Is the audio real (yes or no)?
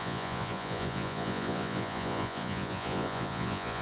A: no